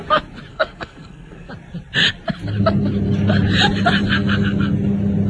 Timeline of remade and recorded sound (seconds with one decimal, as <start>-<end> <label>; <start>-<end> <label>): 0.0-0.5 recorded; 0.5-1.5 remade; 1.5-5.3 recorded